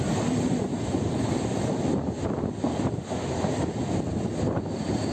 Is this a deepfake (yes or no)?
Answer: no